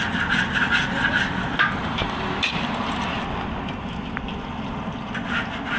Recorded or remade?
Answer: recorded